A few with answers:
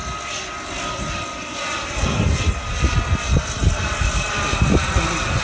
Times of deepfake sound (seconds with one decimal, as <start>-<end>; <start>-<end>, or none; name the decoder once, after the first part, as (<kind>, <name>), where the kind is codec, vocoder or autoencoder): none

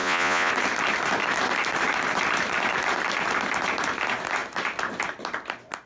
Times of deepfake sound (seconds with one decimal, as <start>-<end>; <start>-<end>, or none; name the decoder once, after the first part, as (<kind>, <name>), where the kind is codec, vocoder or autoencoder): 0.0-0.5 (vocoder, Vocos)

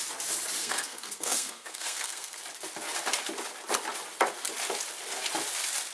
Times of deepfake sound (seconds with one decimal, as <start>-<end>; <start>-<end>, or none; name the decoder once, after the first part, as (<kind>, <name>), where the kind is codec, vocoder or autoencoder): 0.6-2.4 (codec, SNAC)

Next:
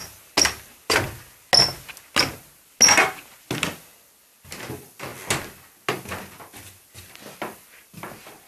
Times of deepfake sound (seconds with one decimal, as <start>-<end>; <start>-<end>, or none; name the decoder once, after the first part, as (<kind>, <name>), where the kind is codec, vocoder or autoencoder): 4.5-5.1 (vocoder, BigVGAN v2); 5.9-8.5